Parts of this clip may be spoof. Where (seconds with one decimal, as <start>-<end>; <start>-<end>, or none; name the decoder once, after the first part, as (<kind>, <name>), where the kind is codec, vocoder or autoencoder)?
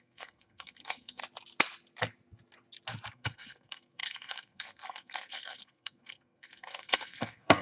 0.0-1.2 (codec, SNAC); 3.1-7.6